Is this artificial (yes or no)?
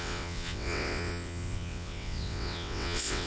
yes